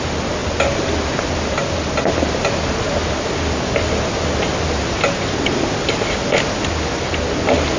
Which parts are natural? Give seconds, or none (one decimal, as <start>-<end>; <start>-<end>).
0.0-7.8